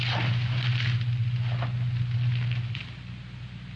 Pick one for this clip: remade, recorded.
recorded